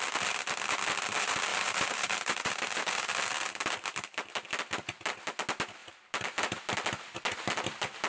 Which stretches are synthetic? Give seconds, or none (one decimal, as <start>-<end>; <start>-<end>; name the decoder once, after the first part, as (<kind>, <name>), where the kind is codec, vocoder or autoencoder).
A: 1.5-3.1 (vocoder, BigVGAN v2); 5.8-6.6